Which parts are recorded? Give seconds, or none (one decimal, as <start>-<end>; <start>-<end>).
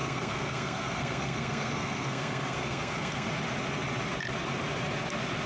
3.3-5.5